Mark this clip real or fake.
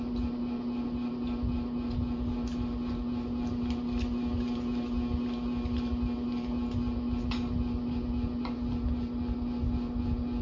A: real